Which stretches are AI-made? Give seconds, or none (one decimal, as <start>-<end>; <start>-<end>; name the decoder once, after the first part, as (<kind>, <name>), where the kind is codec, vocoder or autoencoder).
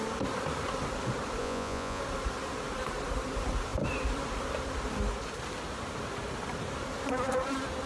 1.4-2.0 (vocoder, Vocos)